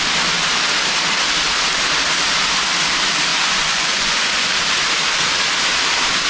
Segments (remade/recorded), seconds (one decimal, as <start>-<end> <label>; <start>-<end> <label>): 0.0-3.3 recorded; 3.3-4.5 remade; 4.5-6.3 recorded

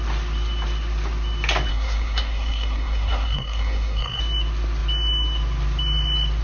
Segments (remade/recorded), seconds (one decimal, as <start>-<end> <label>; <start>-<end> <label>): 0.0-1.7 recorded; 1.7-4.2 remade; 4.2-6.4 recorded

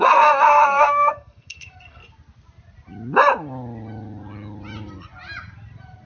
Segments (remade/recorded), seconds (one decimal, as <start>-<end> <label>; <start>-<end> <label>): 0.0-2.0 remade; 2.0-6.1 recorded

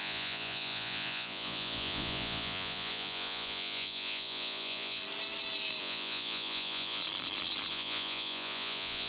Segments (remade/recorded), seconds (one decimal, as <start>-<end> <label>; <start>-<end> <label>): 0.0-5.0 remade; 5.0-5.8 recorded; 5.8-7.0 remade; 7.0-7.7 recorded; 7.7-9.1 remade

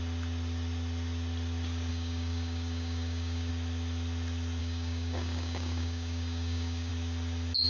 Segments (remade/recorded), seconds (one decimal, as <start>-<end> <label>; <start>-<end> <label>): 0.0-1.9 recorded; 1.9-3.5 remade; 3.5-4.6 recorded; 4.6-6.9 remade; 6.9-7.7 recorded

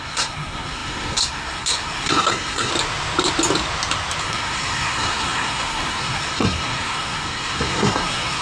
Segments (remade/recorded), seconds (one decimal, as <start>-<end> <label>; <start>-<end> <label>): 0.0-2.7 remade; 2.7-4.2 recorded; 4.2-8.4 remade